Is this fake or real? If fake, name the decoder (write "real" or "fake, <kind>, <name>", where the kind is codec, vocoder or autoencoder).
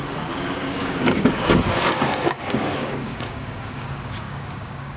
fake, codec, DAC